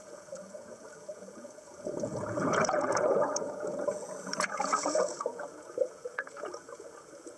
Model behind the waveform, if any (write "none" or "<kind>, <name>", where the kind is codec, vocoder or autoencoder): vocoder, Vocos